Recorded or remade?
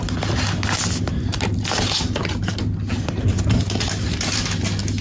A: recorded